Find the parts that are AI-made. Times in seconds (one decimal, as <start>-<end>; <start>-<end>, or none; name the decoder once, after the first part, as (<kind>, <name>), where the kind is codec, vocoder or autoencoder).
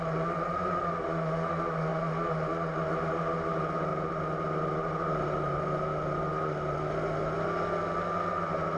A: none